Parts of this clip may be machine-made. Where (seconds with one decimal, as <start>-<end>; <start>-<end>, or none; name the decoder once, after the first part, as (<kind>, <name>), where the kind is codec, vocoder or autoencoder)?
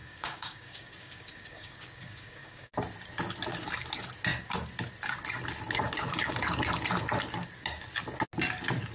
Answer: 0.0-2.7 (codec, DAC)